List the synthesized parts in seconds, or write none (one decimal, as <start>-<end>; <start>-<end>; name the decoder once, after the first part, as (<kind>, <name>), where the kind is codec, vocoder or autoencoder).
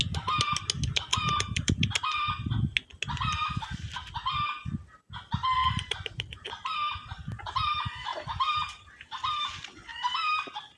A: 1.1-1.9 (vocoder, BigVGAN v2); 5.6-7.5; 8.1-9.5; 9.9-10.4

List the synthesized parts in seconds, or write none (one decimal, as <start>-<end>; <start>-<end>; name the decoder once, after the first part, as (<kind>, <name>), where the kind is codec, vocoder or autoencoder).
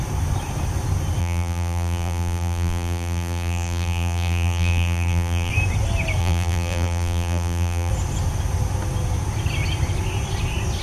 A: 1.2-5.5 (vocoder, BigVGAN v2); 6.2-7.9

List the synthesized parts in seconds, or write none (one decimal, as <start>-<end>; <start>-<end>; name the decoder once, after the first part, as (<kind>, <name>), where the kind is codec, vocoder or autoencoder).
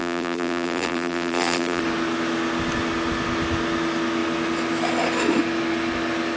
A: 0.0-1.8 (vocoder, BigVGAN v2)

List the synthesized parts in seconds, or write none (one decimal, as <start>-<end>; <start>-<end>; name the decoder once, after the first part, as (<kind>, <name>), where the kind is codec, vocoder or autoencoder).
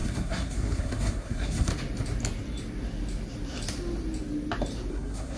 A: 0.0-1.7 (codec, SNAC); 4.9-5.4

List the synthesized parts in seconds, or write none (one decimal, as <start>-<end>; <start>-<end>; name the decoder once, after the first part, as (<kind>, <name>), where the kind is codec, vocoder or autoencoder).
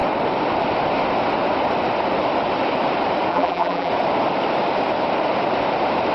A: 3.3-3.9 (vocoder, BigVGAN v2)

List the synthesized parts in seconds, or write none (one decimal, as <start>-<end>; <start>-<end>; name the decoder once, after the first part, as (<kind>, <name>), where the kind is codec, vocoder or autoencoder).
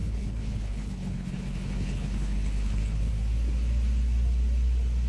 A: 0.0-3.1 (codec, HILCodec)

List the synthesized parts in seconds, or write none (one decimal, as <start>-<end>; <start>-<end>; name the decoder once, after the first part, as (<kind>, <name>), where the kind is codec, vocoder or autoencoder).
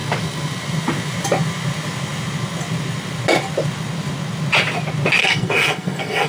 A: 5.2-6.3 (codec, SNAC)